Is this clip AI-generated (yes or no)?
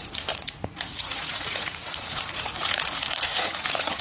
yes